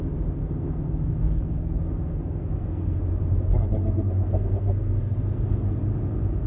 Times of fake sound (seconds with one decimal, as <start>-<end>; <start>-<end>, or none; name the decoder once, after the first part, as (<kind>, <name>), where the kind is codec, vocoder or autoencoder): 0.4-3.0 (codec, SNAC); 3.7-5.8